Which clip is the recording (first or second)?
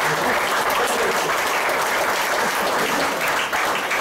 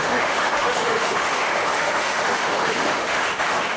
first